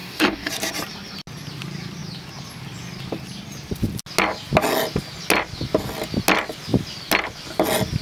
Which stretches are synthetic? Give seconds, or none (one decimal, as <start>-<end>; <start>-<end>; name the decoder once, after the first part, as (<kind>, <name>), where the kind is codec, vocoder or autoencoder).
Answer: 0.0-0.5 (codec, DAC)